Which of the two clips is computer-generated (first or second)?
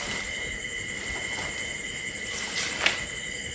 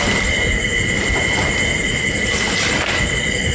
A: second